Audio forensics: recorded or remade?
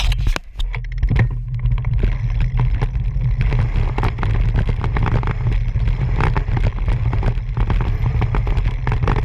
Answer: recorded